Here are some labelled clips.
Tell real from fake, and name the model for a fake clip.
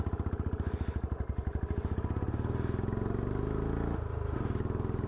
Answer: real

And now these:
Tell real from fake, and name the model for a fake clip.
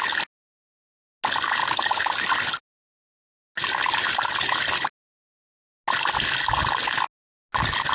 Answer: real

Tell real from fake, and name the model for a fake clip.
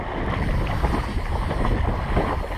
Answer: real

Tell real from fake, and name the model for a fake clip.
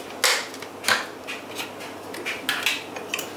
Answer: real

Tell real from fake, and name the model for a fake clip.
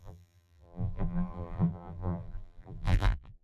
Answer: fake, vocoder, BigVGAN v2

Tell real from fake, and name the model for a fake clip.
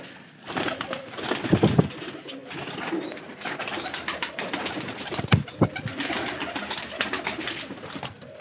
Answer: real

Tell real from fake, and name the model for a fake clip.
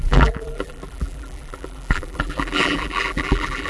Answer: fake, vocoder, BigVGAN v2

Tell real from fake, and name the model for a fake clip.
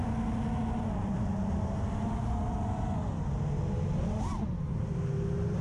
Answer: real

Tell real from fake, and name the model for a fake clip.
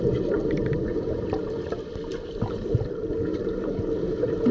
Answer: real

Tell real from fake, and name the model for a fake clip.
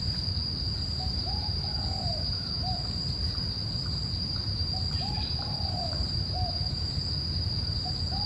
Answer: fake, vocoder, BigVGAN v2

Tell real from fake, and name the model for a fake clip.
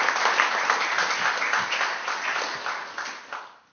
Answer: real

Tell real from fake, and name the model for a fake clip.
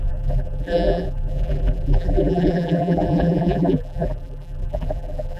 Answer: fake, vocoder, BigVGAN v2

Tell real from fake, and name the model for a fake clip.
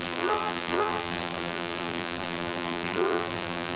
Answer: fake, vocoder, BigVGAN v2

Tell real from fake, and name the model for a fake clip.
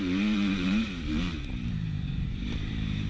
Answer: fake, vocoder, BigVGAN v2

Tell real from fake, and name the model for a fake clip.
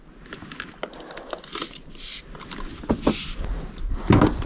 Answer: real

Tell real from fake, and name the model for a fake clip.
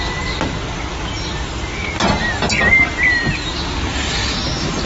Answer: real